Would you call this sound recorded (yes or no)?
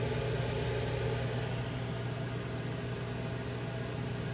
yes